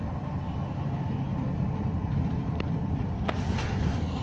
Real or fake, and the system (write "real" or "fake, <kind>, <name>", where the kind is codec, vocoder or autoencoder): real